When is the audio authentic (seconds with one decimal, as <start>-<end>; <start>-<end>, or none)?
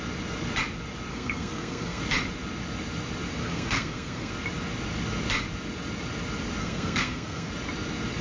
0.0-1.1; 2.0-3.4; 4.3-6.6; 7.5-8.2